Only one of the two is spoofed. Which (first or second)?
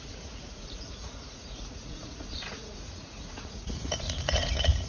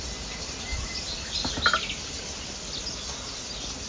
first